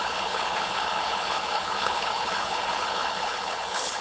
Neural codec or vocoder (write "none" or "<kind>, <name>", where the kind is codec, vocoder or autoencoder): codec, HILCodec